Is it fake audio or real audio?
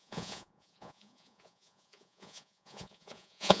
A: fake